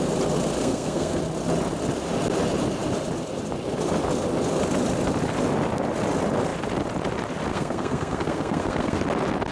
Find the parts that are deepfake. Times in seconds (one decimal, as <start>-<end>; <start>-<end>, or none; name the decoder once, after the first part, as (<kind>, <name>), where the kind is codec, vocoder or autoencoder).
0.6-1.2 (codec, SNAC); 7.5-9.0